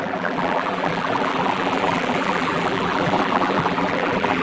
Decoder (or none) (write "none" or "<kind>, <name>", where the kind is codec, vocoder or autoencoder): vocoder, BigVGAN v2